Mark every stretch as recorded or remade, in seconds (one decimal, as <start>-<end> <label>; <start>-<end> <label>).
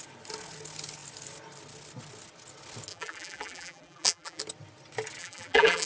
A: 0.0-2.9 recorded; 2.9-4.4 remade; 4.4-5.2 recorded; 5.2-5.9 remade